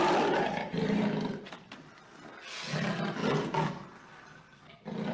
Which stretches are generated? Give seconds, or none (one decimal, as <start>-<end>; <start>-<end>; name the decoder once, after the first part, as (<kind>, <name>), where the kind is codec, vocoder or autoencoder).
none